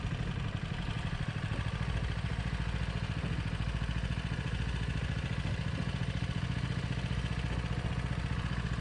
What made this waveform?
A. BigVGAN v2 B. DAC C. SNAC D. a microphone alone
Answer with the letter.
D